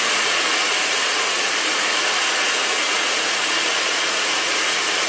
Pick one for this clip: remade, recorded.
remade